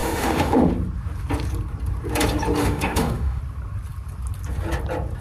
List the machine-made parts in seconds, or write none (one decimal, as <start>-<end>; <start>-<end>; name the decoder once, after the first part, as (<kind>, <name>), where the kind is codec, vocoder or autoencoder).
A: 0.0-0.7 (autoencoder, DAC-VAE); 2.6-3.4